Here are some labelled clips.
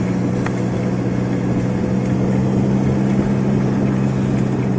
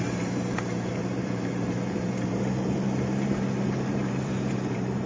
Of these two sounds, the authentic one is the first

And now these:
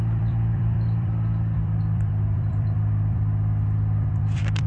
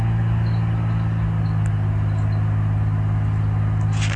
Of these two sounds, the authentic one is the second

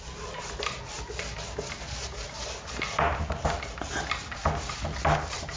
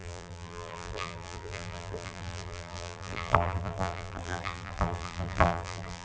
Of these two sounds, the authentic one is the first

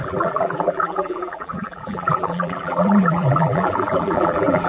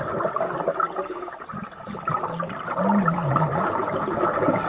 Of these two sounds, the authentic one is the second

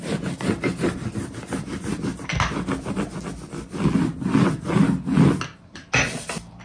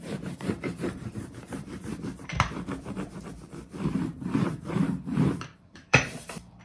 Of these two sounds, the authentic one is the first